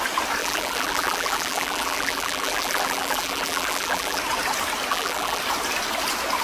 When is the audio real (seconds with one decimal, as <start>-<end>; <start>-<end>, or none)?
0.0-0.4; 4.2-4.9; 5.4-6.4